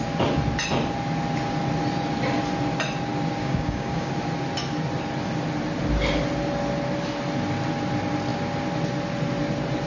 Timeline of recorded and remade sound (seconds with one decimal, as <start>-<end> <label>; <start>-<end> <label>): 0.0-3.4 recorded; 3.4-4.1 remade; 4.1-9.9 recorded